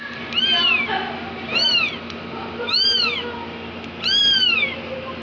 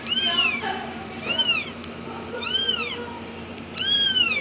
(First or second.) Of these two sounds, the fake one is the second